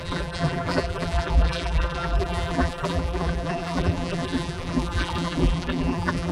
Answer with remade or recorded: remade